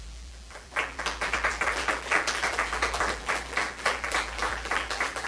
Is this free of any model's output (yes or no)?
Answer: no